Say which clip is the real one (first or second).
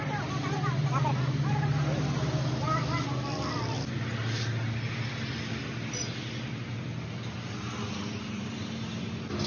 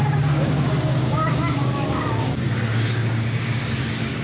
first